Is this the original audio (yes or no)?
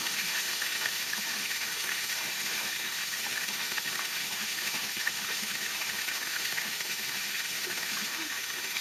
no